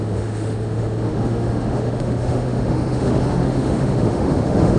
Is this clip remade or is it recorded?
remade